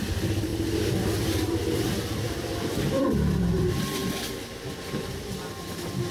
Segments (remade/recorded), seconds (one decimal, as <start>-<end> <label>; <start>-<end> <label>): 0.0-4.0 remade; 4.0-6.1 recorded